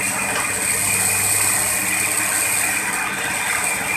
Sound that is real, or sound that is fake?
real